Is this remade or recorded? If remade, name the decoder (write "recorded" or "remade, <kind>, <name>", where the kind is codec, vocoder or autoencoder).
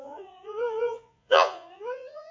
remade, vocoder, Vocos